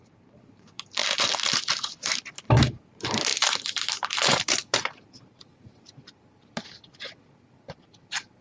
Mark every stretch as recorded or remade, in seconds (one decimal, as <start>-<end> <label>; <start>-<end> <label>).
0.0-1.0 remade; 1.0-2.3 recorded; 2.3-8.4 remade